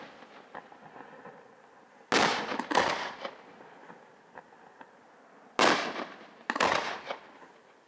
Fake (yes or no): no